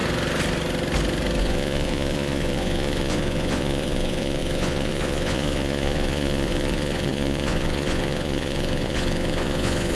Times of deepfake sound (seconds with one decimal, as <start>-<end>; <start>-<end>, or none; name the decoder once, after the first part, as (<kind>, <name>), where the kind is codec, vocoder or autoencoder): 1.4-9.9 (vocoder, Vocos)